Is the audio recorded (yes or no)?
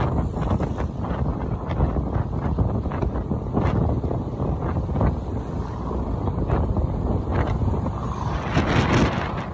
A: yes